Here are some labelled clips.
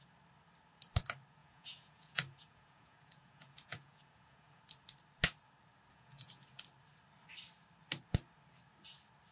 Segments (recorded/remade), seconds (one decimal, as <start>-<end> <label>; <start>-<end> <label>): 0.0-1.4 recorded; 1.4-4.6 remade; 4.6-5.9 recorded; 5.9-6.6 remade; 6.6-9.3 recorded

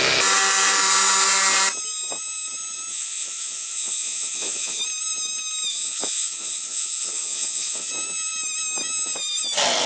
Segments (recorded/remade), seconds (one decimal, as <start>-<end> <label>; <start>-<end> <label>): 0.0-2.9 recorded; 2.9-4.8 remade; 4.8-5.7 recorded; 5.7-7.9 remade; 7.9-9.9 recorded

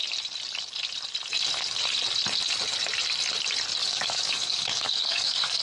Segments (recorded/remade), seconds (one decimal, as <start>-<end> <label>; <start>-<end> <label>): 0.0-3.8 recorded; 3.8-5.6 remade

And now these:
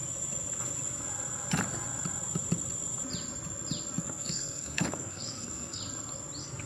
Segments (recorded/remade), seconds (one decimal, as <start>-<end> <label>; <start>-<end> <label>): 0.0-4.0 recorded; 4.0-5.8 remade; 5.8-6.7 recorded